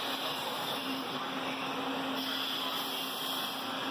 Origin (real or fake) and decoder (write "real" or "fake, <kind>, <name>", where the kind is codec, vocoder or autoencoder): real